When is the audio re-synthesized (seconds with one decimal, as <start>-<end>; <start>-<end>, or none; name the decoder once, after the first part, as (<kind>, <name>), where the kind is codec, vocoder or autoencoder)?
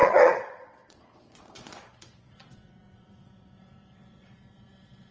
0.0-5.1 (vocoder, Vocos)